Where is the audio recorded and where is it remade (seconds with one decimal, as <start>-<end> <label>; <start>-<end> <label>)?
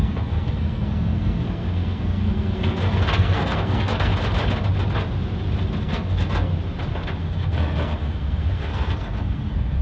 0.0-4.1 remade; 4.1-5.8 recorded; 5.8-6.5 remade; 6.5-7.2 recorded; 7.2-9.8 remade